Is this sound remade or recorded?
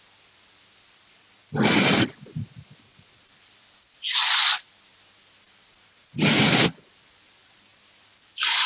recorded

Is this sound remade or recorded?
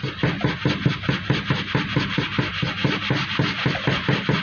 recorded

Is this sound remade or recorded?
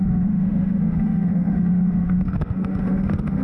remade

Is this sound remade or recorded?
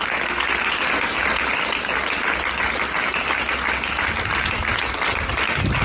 recorded